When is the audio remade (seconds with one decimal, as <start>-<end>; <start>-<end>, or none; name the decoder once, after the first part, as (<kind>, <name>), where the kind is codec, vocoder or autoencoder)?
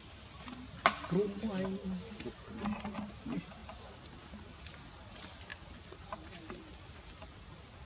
none